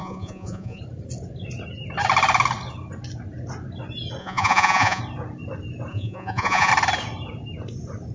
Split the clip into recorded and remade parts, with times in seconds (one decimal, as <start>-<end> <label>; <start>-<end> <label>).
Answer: 0.0-0.8 remade; 0.8-4.2 recorded; 4.2-5.0 remade; 5.0-5.9 recorded; 5.9-6.7 remade; 6.7-8.1 recorded